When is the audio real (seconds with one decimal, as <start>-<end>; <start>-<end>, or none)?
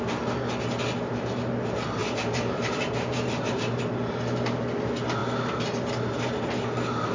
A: 0.0-2.0; 3.8-7.1